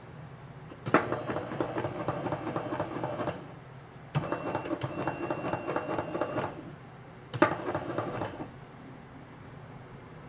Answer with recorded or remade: recorded